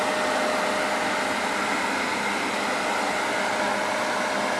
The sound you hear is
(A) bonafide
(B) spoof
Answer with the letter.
A